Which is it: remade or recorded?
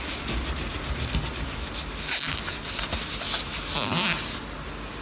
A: recorded